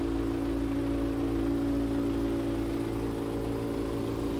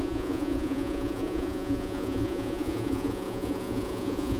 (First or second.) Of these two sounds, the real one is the first